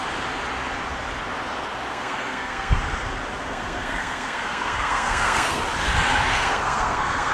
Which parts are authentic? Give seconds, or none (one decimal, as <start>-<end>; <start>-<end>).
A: 0.0-1.9; 2.8-3.4; 5.6-6.3